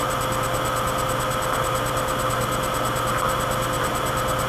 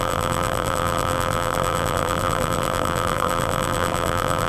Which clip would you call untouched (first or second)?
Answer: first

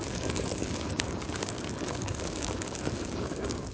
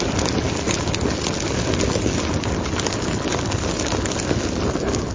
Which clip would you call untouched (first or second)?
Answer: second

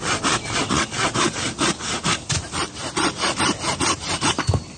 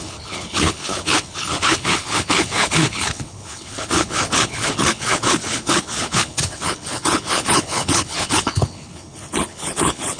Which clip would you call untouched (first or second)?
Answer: first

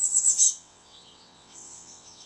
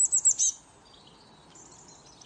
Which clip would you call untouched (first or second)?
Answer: second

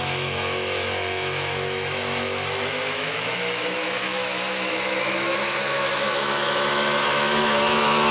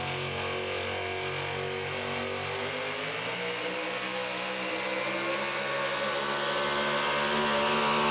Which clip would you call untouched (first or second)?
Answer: second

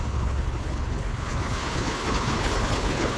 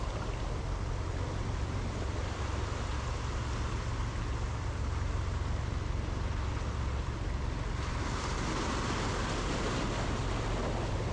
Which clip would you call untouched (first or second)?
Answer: second